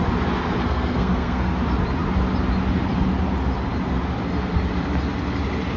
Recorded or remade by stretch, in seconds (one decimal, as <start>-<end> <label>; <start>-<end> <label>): 0.0-0.6 recorded; 0.6-1.5 remade; 1.5-5.8 recorded